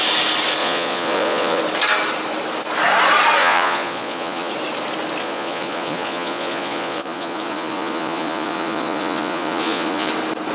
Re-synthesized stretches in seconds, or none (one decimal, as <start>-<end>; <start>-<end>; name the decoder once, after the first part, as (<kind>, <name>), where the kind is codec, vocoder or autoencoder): 0.6-1.6 (vocoder, Vocos); 3.4-4.5; 5.2-10.1

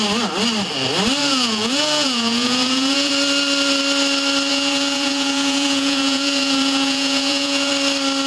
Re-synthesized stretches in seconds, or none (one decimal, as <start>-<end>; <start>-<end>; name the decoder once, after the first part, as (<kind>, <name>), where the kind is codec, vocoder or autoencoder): 1.2-3.1 (vocoder, Vocos); 4.5-7.7

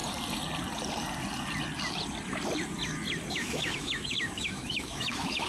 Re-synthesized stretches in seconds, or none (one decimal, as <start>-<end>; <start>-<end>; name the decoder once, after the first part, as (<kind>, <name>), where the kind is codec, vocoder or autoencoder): 3.3-5.5 (autoencoder, DAC-VAE)